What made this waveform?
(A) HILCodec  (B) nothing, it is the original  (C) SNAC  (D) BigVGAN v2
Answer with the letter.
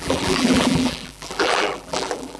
D